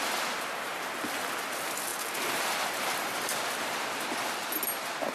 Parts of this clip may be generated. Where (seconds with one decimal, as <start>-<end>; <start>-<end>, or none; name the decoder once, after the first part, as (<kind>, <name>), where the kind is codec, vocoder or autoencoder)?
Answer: none